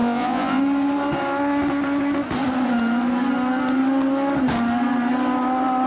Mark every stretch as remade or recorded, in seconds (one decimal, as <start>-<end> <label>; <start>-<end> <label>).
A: 0.0-0.6 remade; 0.6-5.9 recorded